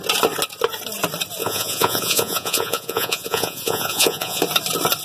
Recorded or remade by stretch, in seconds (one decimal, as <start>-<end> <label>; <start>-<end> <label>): 0.0-1.4 recorded; 1.4-4.4 remade; 4.4-5.0 recorded